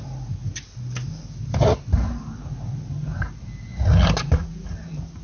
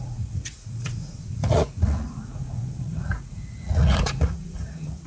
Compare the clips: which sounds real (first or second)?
first